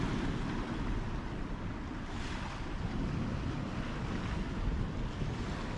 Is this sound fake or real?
real